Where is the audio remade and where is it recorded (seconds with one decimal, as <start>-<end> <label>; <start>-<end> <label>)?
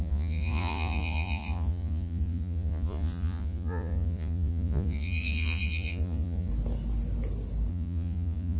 0.0-6.5 remade; 6.5-7.7 recorded; 7.7-8.6 remade